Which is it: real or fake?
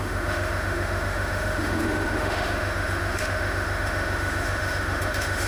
fake